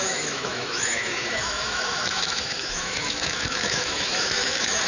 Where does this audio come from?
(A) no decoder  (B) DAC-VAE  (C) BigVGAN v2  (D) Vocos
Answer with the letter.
B